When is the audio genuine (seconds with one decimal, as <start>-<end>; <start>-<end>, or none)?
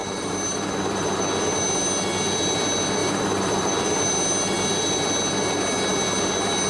1.2-3.0; 3.7-6.7